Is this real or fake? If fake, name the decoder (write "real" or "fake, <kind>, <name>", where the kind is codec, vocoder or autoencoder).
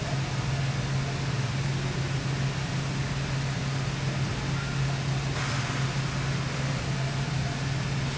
real